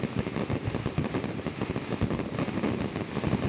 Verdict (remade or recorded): recorded